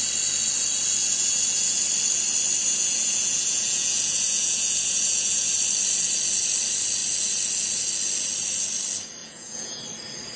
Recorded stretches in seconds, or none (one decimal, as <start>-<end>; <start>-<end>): 0.0-1.0; 1.8-2.6; 5.5-9.2; 9.8-10.4